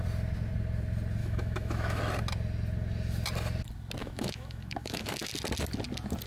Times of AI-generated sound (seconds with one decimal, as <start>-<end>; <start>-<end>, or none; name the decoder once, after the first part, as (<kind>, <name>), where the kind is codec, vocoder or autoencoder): 1.2-2.0 (autoencoder, DAC-VAE); 4.0-5.3